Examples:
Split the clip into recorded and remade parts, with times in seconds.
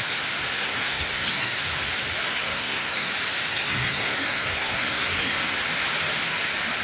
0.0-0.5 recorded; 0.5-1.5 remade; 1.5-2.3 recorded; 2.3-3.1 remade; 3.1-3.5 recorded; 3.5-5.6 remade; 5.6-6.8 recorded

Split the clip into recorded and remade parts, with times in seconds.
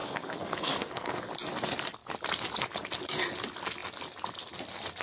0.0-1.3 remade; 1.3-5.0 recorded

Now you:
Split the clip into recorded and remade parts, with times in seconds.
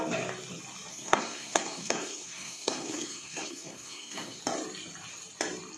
0.0-0.9 recorded; 0.9-4.4 remade; 4.4-5.8 recorded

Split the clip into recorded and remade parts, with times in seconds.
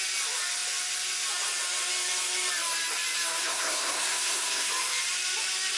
0.0-3.4 recorded; 3.4-4.7 remade; 4.7-5.8 recorded